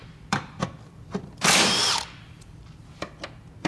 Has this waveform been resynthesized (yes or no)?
yes